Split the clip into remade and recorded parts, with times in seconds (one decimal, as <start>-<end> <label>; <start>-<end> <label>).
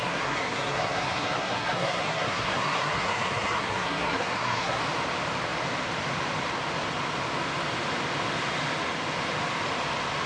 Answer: 0.0-4.8 remade; 4.8-10.3 recorded